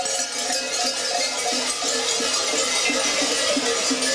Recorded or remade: recorded